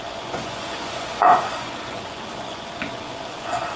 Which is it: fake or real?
fake